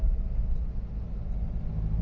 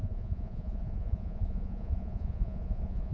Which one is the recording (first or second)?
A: first